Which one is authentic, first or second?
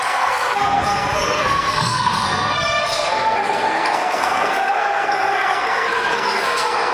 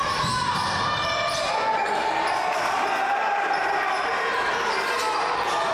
second